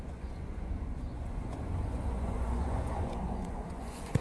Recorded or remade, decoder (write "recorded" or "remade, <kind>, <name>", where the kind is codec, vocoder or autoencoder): remade, vocoder, Vocos